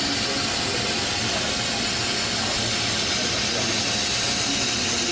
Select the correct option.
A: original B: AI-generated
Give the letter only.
A